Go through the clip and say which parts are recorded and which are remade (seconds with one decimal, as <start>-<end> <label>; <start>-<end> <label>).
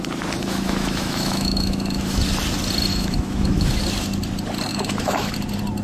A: 0.0-0.4 recorded; 0.4-2.2 remade; 2.2-2.9 recorded; 2.9-3.8 remade; 3.8-4.7 recorded; 4.7-5.3 remade; 5.3-5.8 recorded